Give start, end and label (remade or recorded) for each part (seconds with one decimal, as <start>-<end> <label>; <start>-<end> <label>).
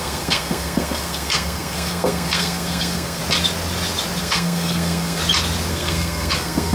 0.0-3.2 remade; 3.2-4.2 recorded; 4.2-5.2 remade; 5.2-5.7 recorded; 5.7-6.7 remade